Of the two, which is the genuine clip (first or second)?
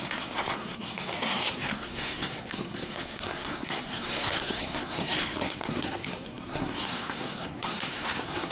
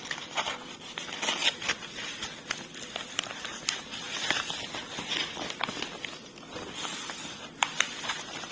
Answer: second